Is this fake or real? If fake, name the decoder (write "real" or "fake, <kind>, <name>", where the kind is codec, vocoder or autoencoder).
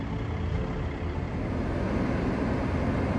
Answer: real